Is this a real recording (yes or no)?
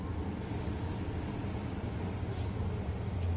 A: yes